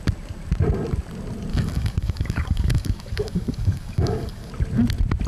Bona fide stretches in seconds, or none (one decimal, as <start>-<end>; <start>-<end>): 0.0-1.5; 4.5-5.3